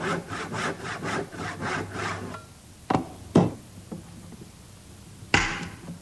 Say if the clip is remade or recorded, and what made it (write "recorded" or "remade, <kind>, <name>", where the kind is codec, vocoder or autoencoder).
recorded